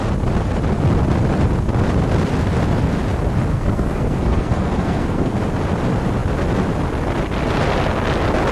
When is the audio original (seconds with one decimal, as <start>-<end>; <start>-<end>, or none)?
0.0-3.5; 5.4-8.5

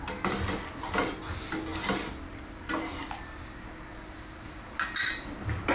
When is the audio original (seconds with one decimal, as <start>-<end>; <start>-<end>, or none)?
0.0-5.7

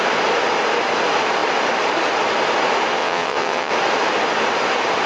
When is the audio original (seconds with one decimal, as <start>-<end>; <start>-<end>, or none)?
0.0-3.0; 3.7-5.1

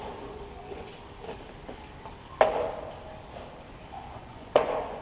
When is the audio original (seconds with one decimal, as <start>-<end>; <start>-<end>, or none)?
0.9-3.9

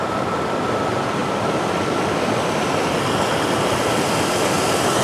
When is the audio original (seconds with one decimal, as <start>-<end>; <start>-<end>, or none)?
0.0-5.0

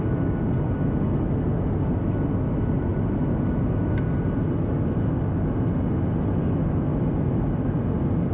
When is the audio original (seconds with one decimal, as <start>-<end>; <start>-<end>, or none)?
0.0-2.9; 3.5-6.9

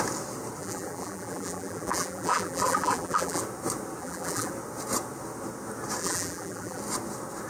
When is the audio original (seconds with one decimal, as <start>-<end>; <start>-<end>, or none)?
0.0-0.6; 3.4-4.0; 4.5-6.0; 6.8-7.5